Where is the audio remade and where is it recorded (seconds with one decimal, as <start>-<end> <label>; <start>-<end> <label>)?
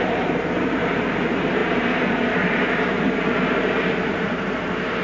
0.0-5.0 remade